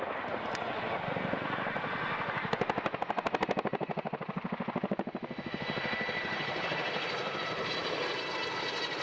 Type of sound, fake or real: real